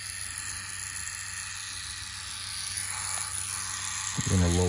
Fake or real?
real